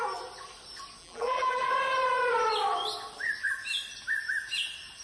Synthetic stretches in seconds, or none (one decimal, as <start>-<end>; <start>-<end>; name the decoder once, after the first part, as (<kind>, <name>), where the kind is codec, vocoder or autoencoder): 1.0-1.7 (vocoder, BigVGAN v2)